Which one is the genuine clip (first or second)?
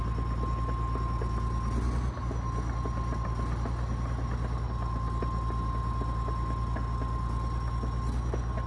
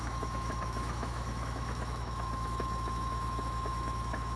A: first